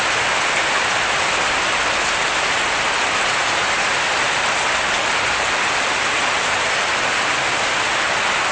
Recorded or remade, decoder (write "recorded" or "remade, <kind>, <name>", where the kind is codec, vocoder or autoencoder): recorded